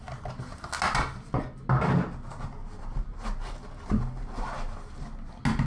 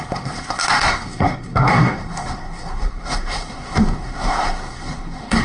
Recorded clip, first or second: first